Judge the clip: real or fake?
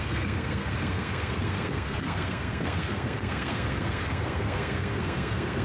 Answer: fake